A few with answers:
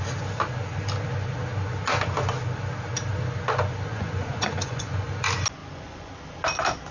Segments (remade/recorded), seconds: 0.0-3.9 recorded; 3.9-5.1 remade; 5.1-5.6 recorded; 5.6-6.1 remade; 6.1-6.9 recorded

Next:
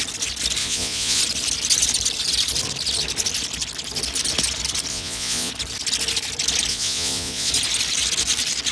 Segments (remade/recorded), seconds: 0.0-0.6 recorded; 0.6-1.2 remade; 1.2-4.9 recorded; 4.9-5.5 remade; 5.5-6.7 recorded; 6.7-7.5 remade; 7.5-8.7 recorded